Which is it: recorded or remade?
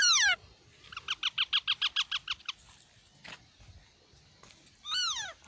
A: recorded